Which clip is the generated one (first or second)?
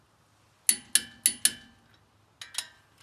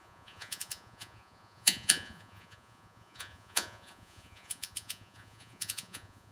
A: second